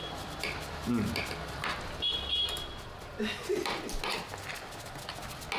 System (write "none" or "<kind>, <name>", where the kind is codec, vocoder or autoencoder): none